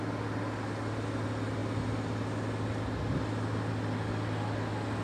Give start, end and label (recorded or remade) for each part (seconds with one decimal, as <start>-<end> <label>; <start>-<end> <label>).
0.0-5.0 recorded